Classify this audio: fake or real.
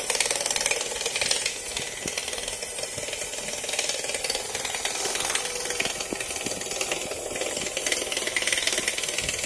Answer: real